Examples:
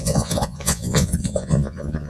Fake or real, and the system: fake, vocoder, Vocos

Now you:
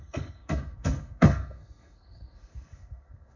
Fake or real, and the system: fake, codec, SNAC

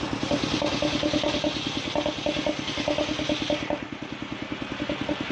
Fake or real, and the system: real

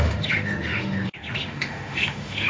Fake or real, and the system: fake, autoencoder, DAC-VAE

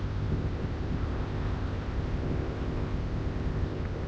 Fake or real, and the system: fake, codec, ZipCodec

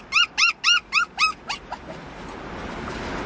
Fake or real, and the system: real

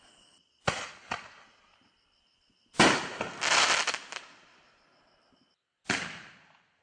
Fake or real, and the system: real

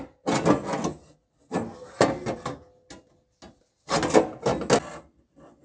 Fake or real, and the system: real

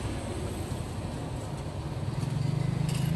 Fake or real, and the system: real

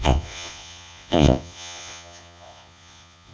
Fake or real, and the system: fake, vocoder, Vocos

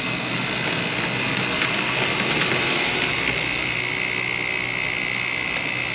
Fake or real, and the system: real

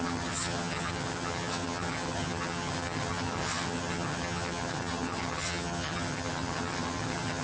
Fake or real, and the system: fake, vocoder, HiFi-GAN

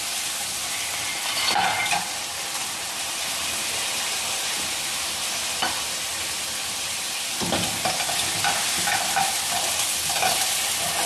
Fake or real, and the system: real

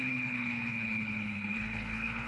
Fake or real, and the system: fake, codec, HILCodec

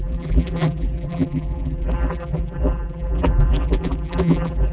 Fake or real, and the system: fake, vocoder, BigVGAN v2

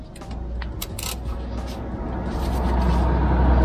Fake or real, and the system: real